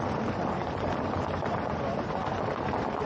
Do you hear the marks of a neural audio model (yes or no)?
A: yes